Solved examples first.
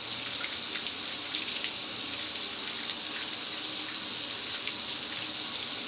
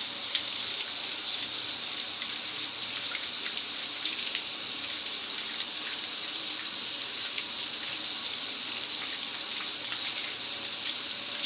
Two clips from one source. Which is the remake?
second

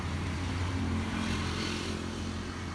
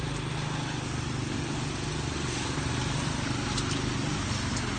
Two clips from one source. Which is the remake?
first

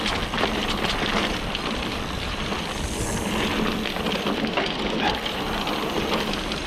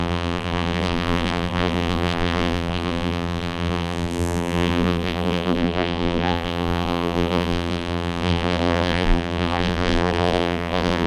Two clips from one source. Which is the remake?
second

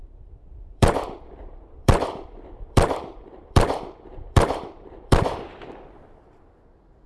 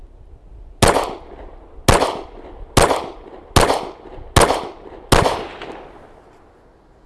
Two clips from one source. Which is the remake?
first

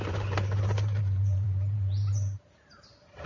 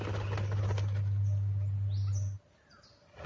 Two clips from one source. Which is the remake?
first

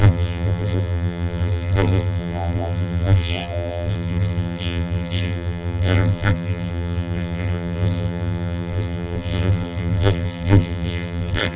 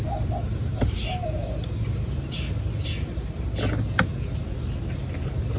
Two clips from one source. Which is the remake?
first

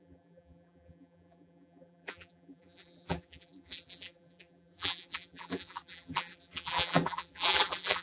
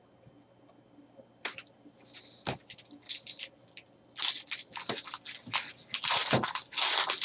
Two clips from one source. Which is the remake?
first